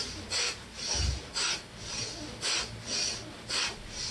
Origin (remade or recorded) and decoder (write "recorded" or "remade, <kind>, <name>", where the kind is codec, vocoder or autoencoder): recorded